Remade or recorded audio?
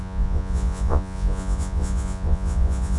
remade